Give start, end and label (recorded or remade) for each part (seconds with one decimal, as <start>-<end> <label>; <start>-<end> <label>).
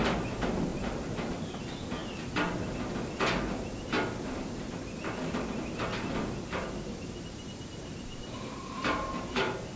0.0-0.7 recorded; 0.7-1.6 remade; 1.6-7.8 recorded; 7.8-9.8 remade